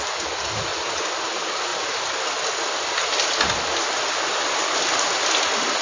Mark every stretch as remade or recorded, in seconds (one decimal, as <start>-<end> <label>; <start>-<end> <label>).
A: 0.0-5.8 recorded